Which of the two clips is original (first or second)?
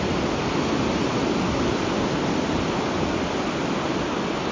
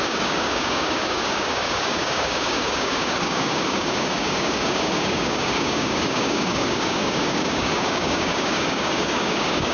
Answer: first